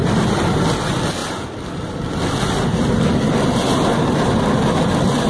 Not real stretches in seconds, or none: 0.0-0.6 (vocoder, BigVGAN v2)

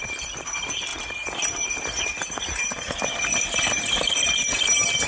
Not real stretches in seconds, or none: 0.9-4.0 (vocoder, BigVGAN v2)

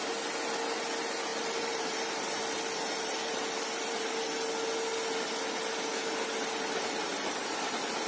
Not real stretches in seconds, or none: 1.3-4.1 (vocoder, BigVGAN v2); 7.1-8.1

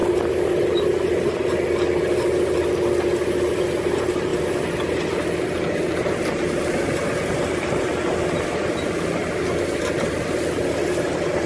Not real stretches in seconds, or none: none

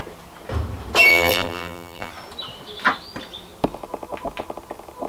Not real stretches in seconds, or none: 1.1-2.1 (vocoder, BigVGAN v2)

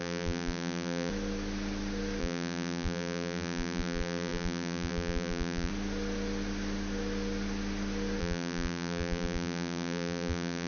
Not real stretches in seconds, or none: 0.0-1.1 (vocoder, BigVGAN v2); 2.2-5.7; 8.2-10.7

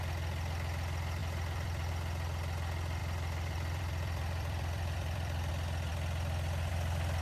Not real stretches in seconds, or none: 1.2-1.9 (vocoder, BigVGAN v2); 3.0-5.5

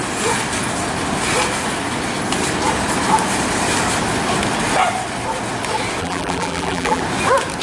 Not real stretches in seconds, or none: 6.0-7.0 (vocoder, BigVGAN v2)